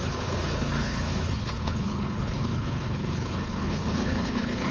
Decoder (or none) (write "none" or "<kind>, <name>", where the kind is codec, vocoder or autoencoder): codec, HILCodec